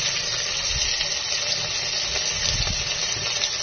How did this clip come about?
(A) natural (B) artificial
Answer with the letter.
A